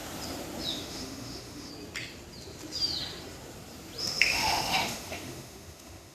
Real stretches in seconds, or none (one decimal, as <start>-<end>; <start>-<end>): 0.0-0.7; 1.7-4.0